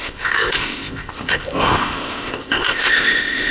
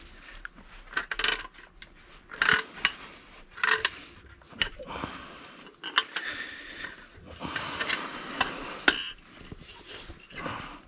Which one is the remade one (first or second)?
first